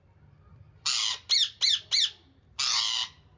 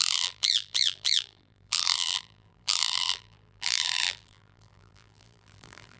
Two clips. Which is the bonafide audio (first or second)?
first